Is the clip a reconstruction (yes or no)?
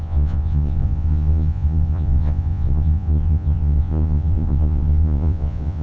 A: yes